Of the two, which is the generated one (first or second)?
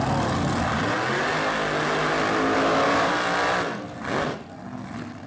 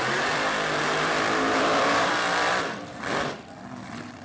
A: second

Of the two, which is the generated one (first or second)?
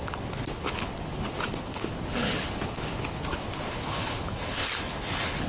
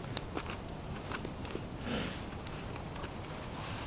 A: first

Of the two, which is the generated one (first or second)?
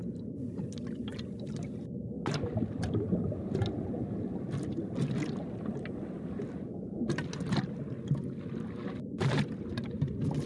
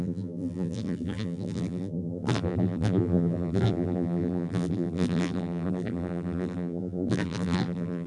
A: second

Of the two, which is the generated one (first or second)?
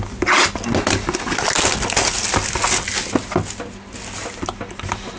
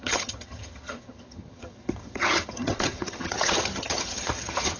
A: second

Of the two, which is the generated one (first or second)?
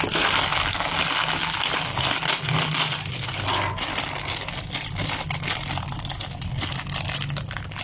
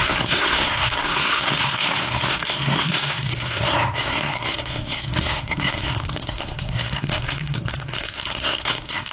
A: second